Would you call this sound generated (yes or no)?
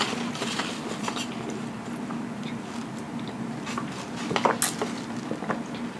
no